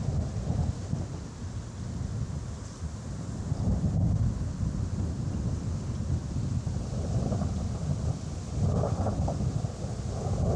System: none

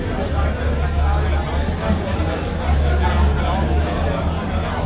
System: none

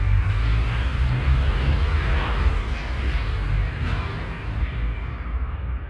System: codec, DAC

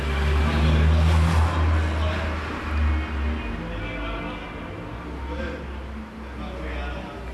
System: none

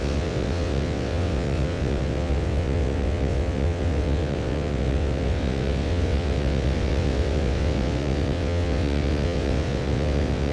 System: vocoder, WaveNeXt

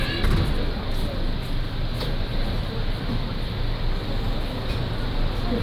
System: none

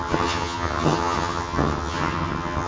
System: vocoder, HiFi-GAN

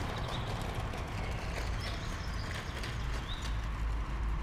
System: none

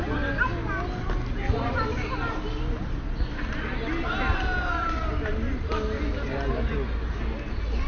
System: none